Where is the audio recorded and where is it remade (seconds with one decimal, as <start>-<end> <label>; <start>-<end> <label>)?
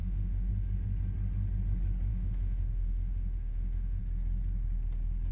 0.0-0.5 remade; 0.5-2.1 recorded; 2.1-4.0 remade; 4.0-5.3 recorded